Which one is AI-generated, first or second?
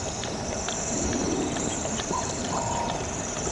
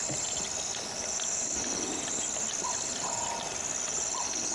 first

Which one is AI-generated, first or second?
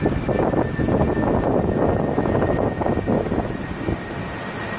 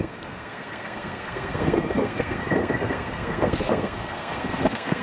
second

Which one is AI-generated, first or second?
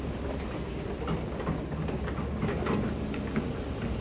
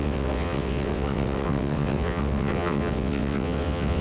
second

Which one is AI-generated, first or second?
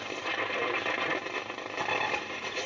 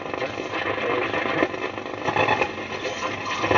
first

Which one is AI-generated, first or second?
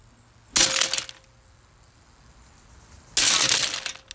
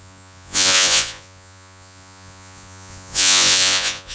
second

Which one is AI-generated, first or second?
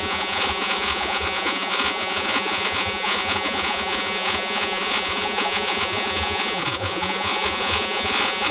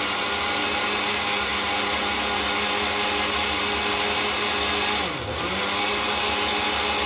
first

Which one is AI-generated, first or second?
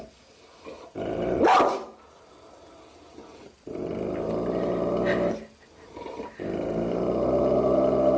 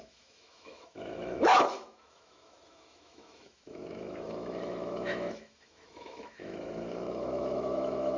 second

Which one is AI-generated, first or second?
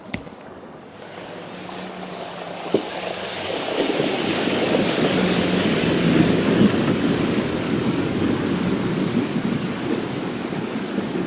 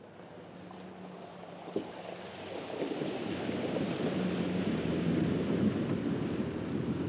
first